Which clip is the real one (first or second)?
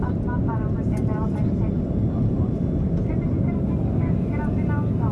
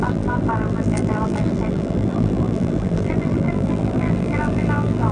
first